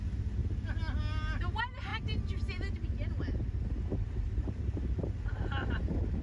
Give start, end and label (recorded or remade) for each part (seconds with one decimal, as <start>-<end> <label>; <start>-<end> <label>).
0.0-6.2 recorded